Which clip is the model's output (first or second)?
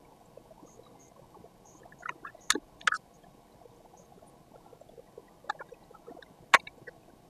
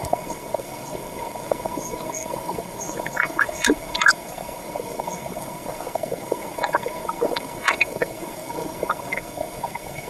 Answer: second